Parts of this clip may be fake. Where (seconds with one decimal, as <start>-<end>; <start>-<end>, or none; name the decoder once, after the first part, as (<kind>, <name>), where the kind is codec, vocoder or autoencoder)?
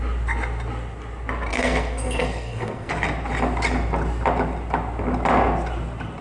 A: 1.5-2.9 (codec, SNAC)